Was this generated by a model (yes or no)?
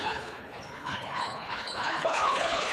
yes